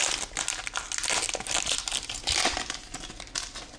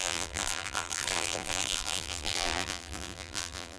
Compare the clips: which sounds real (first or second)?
first